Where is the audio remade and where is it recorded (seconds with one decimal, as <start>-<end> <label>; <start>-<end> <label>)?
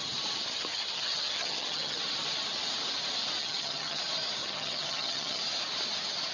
0.0-0.7 recorded; 0.7-2.0 remade; 2.0-3.4 recorded; 3.4-4.0 remade; 4.0-4.4 recorded; 4.4-5.4 remade; 5.4-6.3 recorded